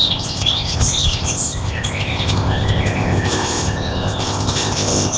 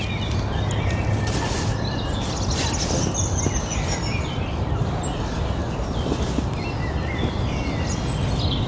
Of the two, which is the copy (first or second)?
first